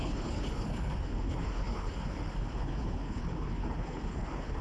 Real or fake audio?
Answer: fake